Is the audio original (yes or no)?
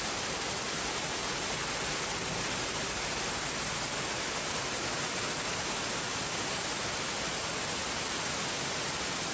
yes